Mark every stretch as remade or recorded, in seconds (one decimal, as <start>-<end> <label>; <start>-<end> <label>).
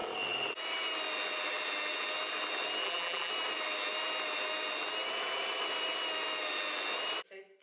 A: 0.0-2.8 recorded; 2.8-3.3 remade; 3.3-7.6 recorded